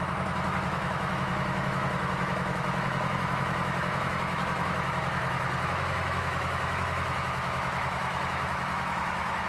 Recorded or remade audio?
remade